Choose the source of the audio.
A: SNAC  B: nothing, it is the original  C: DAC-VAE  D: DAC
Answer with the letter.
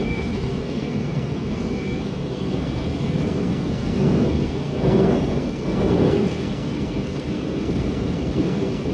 A